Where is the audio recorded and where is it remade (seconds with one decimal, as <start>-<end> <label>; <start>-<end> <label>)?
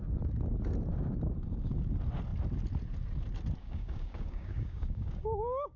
0.0-3.6 recorded; 3.6-5.8 remade